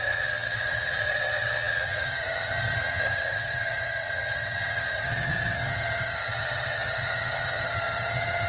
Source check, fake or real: fake